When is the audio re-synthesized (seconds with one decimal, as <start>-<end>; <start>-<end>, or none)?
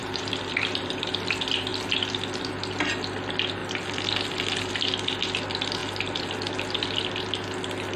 0.0-1.1